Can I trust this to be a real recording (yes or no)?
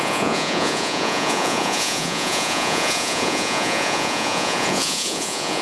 no